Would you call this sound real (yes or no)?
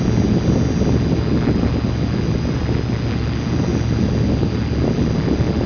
yes